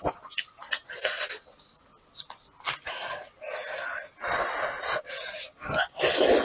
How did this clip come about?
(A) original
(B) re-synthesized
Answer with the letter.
A